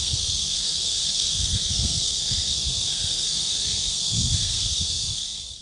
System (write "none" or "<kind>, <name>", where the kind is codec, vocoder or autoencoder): codec, SNAC